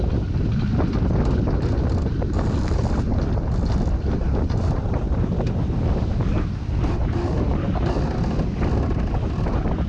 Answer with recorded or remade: recorded